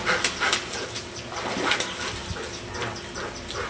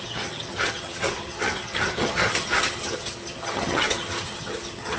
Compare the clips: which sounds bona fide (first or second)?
first